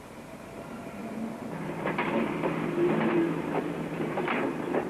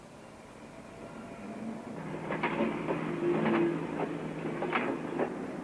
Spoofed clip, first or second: first